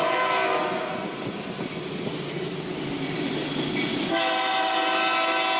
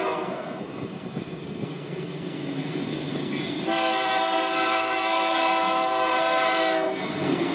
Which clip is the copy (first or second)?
second